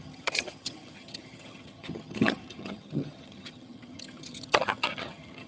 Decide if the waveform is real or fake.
fake